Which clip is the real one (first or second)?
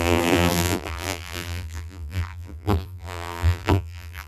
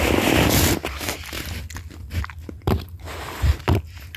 second